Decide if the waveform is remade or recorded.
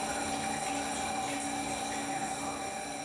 recorded